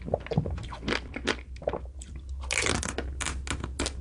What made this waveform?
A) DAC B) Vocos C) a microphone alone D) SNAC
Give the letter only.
C